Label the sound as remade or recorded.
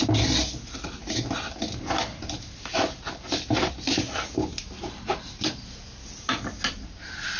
recorded